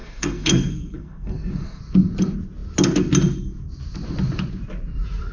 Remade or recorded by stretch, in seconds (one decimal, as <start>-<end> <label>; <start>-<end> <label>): 0.0-1.8 remade; 1.8-5.3 recorded